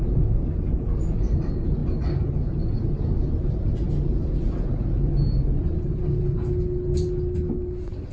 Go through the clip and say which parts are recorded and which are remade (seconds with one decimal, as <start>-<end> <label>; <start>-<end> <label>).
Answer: 0.0-8.1 recorded